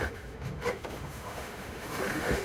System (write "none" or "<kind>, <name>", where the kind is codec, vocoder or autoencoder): autoencoder, DAC-VAE